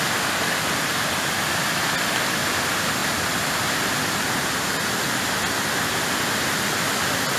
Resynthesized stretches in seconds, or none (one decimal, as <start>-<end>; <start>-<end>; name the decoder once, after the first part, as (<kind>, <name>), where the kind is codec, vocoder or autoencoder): none